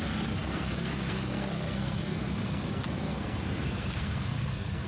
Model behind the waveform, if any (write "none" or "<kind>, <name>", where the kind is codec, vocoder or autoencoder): codec, SNAC